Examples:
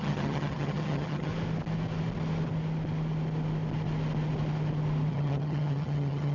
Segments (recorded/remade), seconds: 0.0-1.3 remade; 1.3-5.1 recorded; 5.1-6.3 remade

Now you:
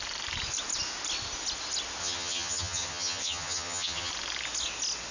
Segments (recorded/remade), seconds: 0.0-2.0 recorded; 2.0-4.1 remade; 4.1-5.1 recorded

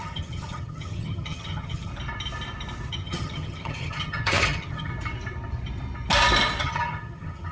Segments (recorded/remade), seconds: 0.0-1.9 remade; 1.9-2.9 recorded; 2.9-4.9 remade; 4.9-6.6 recorded; 6.6-7.5 remade

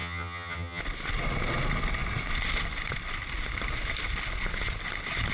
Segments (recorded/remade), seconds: 0.0-0.8 remade; 0.8-5.3 recorded

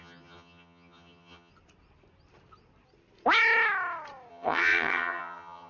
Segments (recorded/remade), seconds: 0.0-1.5 remade; 1.5-4.3 recorded; 4.3-5.7 remade

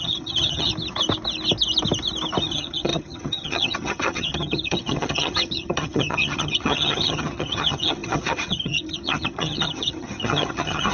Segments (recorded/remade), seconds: 0.0-0.7 remade; 0.7-2.4 recorded; 2.4-10.9 remade

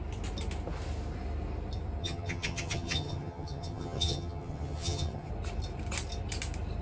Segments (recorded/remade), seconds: 0.0-2.0 recorded; 2.0-5.3 remade; 5.3-6.8 recorded